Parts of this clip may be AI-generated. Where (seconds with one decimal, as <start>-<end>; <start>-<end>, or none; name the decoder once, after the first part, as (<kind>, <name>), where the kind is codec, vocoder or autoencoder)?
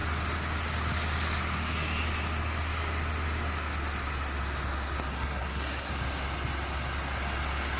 5.1-5.9 (codec, SNAC)